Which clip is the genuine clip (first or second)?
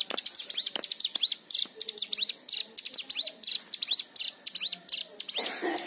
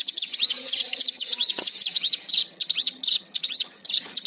first